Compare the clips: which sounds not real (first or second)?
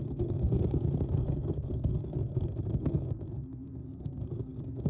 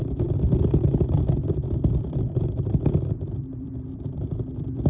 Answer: first